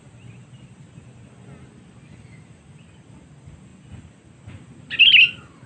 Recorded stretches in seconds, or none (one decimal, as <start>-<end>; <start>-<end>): 0.0-5.7